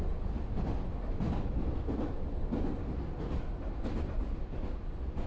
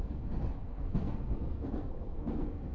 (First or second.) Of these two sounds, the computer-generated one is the second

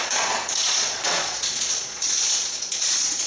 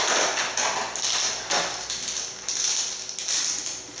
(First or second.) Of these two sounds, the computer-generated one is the first